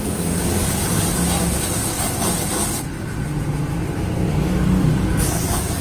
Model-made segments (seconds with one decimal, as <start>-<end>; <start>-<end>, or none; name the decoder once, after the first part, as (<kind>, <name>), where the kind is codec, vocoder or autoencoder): 0.0-0.8 (codec, DAC); 4.3-5.8